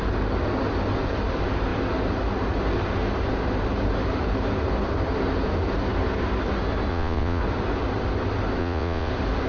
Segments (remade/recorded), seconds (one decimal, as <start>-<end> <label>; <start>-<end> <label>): 0.0-6.9 recorded; 6.9-7.4 remade; 7.4-8.6 recorded; 8.6-9.1 remade; 9.1-9.5 recorded